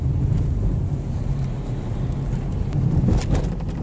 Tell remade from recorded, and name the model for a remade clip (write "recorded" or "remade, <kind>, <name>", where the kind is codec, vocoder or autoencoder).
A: recorded